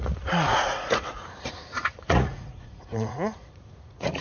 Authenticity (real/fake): fake